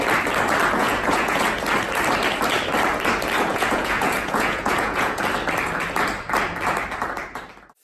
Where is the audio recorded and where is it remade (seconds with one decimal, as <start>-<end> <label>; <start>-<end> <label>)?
0.0-0.8 recorded; 0.8-1.4 remade; 1.4-3.5 recorded; 3.5-5.2 remade; 5.2-7.8 recorded